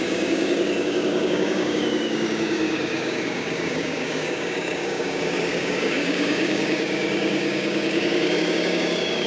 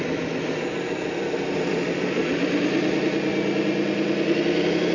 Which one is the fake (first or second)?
first